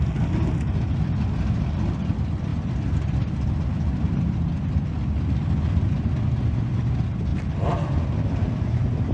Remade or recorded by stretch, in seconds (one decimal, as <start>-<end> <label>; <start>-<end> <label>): 0.0-9.1 recorded